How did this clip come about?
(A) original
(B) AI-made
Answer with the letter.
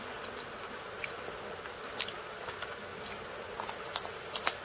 A